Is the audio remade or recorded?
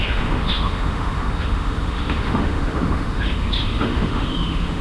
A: remade